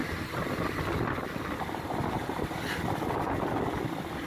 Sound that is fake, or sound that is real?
real